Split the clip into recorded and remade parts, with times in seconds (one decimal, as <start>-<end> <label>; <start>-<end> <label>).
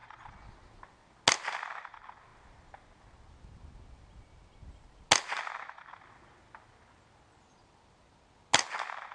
0.0-0.5 remade; 0.5-9.1 recorded